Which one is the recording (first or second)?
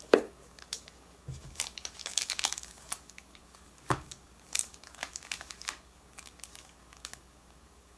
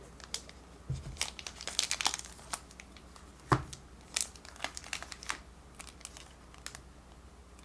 second